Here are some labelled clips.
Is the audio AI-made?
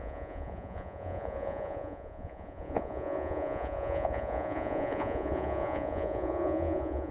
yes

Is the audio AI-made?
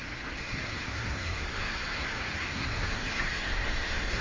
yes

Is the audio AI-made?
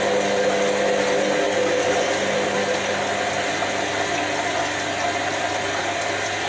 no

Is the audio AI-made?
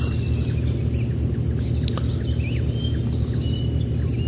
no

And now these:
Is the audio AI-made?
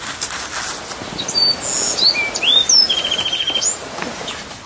no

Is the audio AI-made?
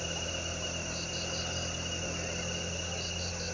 no